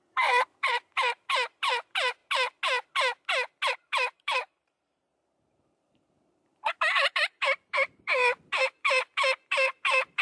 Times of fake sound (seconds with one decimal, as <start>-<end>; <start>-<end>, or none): 0.0-2.2; 3.7-10.2